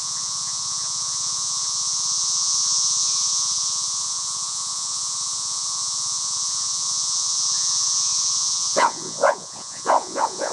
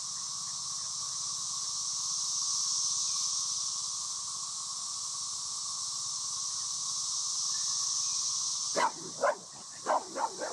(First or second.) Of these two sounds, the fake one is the first